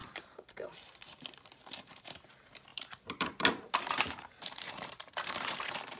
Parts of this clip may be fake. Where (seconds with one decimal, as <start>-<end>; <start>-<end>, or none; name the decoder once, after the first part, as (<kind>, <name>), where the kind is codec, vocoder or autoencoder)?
0.0-6.0 (vocoder, BigVGAN v2)